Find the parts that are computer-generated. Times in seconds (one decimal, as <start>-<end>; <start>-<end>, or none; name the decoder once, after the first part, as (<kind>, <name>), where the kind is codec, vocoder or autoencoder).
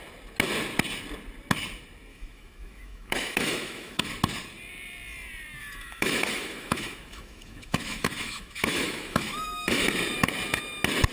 2.1-4.1 (autoencoder, DAC-VAE); 5.6-9.9